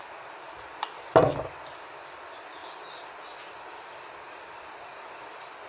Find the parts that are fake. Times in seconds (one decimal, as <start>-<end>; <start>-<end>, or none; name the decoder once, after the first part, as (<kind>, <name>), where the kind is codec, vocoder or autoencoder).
0.0-2.6 (vocoder, BigVGAN v2); 3.5-5.7